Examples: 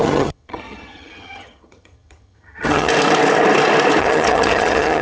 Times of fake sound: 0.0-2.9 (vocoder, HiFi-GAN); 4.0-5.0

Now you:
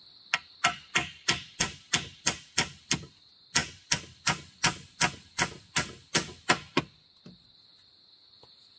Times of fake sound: none